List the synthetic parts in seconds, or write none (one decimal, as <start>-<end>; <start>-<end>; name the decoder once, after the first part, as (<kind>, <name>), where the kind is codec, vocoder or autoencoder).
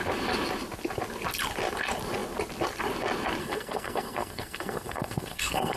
3.4-5.8 (codec, SNAC)